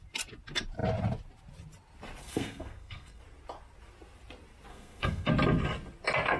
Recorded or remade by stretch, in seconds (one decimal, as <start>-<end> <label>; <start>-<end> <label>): 0.0-2.2 recorded; 2.2-3.2 remade; 3.2-4.7 recorded; 4.7-5.3 remade; 5.3-6.4 recorded